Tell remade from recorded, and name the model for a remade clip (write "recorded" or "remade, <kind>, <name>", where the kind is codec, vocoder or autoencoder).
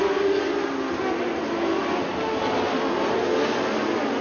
recorded